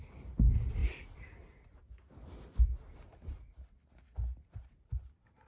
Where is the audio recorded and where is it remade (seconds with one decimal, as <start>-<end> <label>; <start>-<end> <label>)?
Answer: 0.0-5.5 recorded